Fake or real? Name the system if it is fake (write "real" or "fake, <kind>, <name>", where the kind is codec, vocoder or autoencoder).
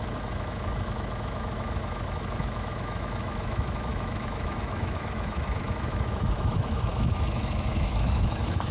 fake, autoencoder, DAC-VAE